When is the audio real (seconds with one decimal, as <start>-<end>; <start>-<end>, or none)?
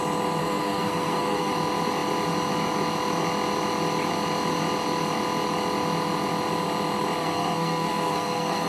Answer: 0.0-0.4; 1.5-7.2